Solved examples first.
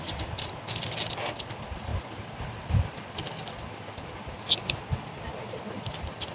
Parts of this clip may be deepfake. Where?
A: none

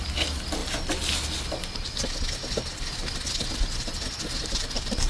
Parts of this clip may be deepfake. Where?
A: none

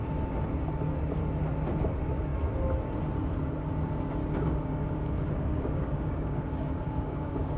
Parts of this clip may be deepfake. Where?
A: 4.2-7.6 (codec, DAC)

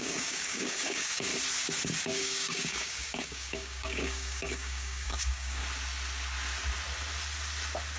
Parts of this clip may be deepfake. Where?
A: 0.0-1.3 (codec, DAC); 2.0-5.6